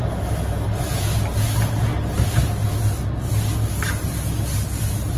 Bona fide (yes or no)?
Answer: yes